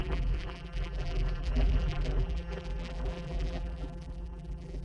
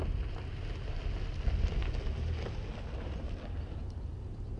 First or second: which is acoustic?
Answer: second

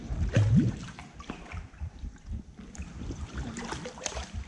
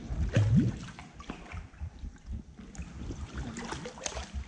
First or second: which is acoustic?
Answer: second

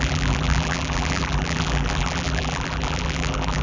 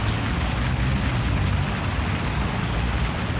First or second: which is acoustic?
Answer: second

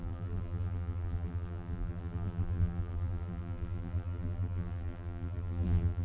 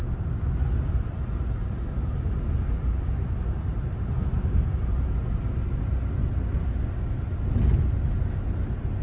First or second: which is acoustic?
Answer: second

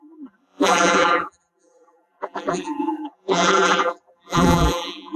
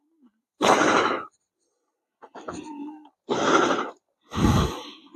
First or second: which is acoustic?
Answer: second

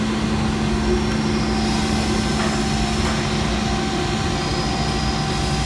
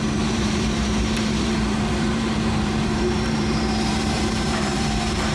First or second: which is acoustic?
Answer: first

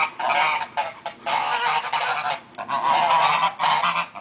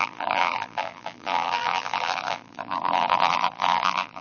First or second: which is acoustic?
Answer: first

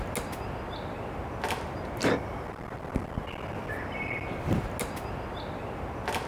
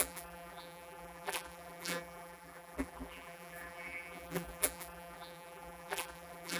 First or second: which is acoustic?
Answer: first